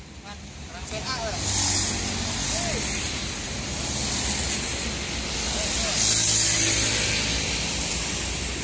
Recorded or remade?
recorded